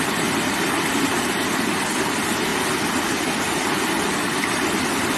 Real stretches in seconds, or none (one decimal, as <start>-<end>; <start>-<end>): 0.0-5.2